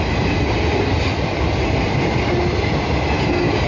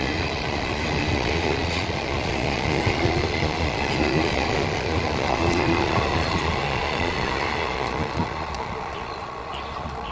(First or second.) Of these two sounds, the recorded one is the first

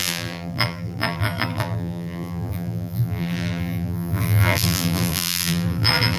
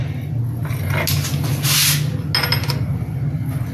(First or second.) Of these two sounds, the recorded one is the second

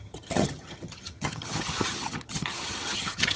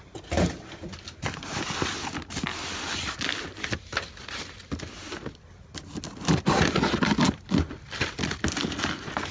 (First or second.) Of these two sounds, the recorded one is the second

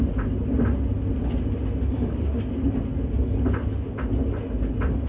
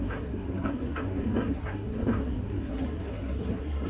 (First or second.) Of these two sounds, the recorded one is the first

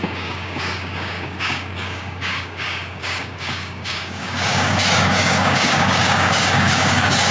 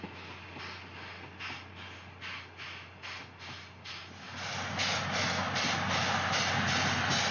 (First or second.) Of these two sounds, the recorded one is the second